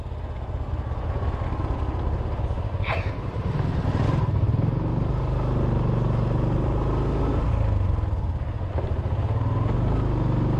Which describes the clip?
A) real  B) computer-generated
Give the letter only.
A